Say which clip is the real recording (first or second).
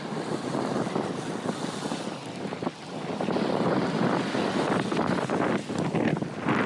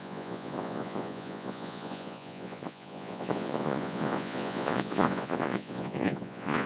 first